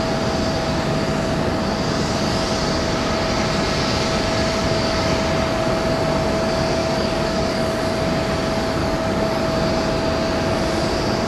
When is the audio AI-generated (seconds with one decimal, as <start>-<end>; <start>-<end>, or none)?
4.6-5.2; 6.8-7.8; 8.8-9.4